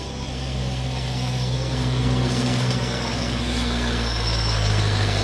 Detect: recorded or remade remade